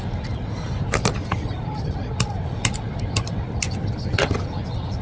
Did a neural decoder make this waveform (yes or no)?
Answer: no